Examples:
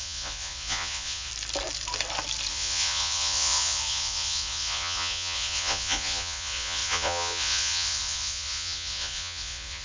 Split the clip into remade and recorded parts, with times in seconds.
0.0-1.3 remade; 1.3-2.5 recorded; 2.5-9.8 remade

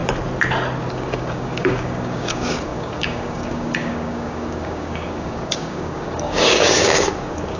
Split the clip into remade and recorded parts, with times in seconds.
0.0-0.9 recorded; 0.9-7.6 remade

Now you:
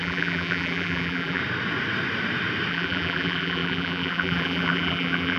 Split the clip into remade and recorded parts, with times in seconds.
0.0-1.4 remade; 1.4-2.7 recorded; 2.7-5.4 remade

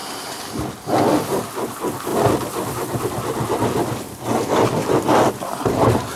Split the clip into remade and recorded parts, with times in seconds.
0.0-6.2 recorded

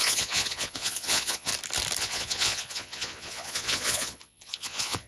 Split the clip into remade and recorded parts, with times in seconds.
0.0-1.5 remade; 1.5-2.0 recorded; 2.0-5.1 remade

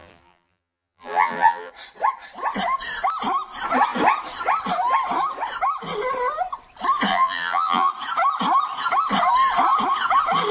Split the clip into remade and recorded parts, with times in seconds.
0.0-1.7 remade; 1.7-7.1 recorded; 7.1-7.9 remade; 7.9-10.5 recorded